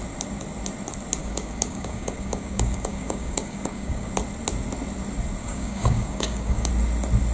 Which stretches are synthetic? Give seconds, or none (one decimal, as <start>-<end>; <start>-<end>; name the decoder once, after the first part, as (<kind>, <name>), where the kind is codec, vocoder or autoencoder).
1.2-4.1 (codec, DAC); 5.4-6.7